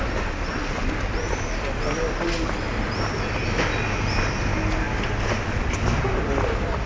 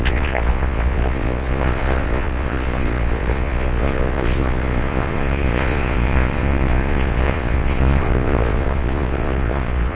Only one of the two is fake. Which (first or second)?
second